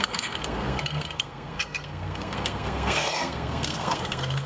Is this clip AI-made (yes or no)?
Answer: yes